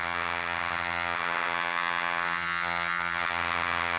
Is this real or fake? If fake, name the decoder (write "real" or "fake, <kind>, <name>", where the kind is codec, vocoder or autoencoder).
fake, vocoder, HiFi-GAN